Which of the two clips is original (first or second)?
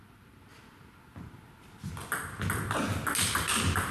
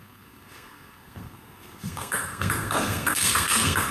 first